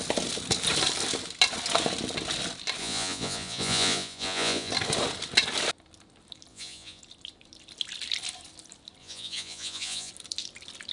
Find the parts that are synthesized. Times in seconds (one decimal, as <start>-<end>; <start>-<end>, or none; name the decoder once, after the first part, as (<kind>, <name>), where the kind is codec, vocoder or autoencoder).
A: 2.8-4.7 (vocoder, Vocos); 6.5-7.0; 9.0-10.1